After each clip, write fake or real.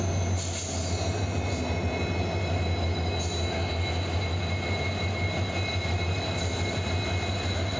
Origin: real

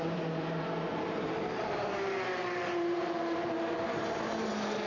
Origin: fake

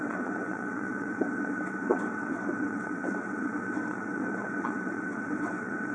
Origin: fake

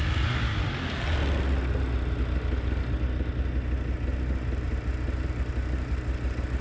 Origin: real